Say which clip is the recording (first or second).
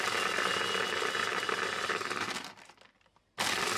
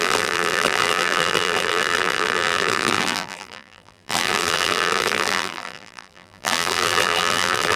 first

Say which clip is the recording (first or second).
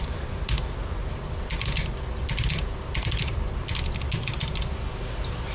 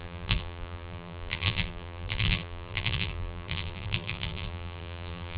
first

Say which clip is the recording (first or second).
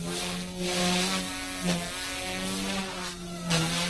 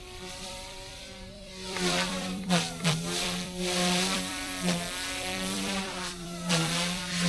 first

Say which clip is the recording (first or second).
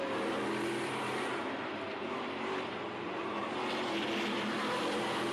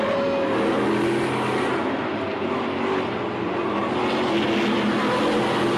second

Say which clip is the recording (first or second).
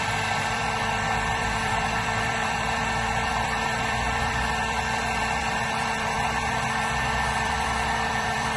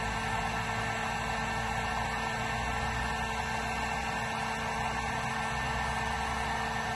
second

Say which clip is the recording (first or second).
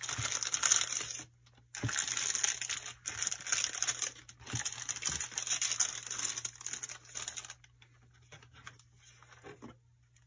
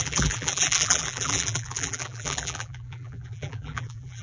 first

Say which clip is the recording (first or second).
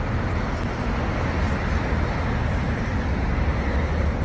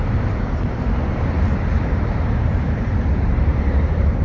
first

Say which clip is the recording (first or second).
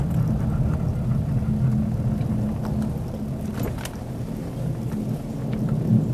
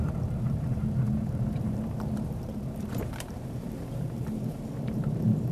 first